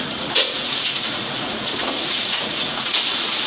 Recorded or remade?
remade